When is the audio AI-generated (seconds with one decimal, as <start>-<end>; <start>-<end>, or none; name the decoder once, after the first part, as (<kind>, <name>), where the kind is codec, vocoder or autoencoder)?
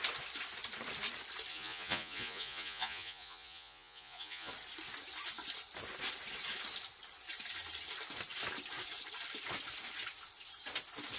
1.5-4.5 (vocoder, Vocos)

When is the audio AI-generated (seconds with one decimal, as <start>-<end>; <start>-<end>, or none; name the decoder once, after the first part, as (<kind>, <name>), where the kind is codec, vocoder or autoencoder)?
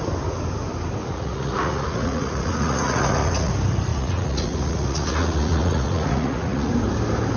1.0-3.5 (vocoder, Vocos); 3.9-6.7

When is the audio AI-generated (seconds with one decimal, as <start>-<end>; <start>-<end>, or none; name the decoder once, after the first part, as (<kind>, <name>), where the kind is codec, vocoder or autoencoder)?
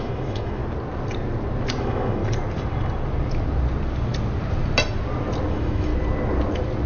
0.0-0.6 (autoencoder, DAC-VAE); 1.8-2.2; 5.5-5.9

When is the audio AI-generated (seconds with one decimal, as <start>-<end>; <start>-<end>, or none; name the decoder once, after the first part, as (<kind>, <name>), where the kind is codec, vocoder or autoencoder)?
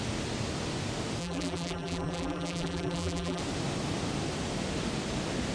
1.2-3.4 (vocoder, BigVGAN v2)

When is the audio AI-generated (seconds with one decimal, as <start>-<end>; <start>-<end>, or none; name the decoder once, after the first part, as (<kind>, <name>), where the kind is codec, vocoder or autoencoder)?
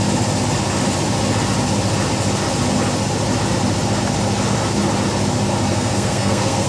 5.7-6.7 (codec, SNAC)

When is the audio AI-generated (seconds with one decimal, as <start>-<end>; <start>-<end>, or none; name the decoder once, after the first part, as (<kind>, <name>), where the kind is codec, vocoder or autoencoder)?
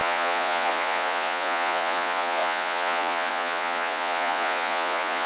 0.0-5.3 (vocoder, Vocos)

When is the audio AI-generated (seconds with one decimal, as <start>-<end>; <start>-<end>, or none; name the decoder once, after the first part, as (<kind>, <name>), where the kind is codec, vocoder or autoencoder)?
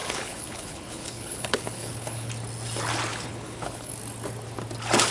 0.0-2.3 (codec, HILCodec); 3.1-3.9